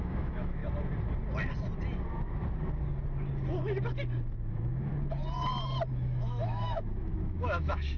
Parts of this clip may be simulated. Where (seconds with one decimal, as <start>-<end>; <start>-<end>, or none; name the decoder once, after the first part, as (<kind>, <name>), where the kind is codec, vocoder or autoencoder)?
0.0-0.6 (autoencoder, DAC-VAE); 4.5-4.9; 5.9-8.0

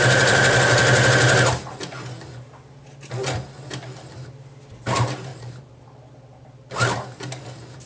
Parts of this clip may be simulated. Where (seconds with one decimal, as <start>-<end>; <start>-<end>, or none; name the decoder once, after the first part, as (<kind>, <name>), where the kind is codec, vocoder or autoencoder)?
5.3-5.8 (vocoder, BigVGAN v2)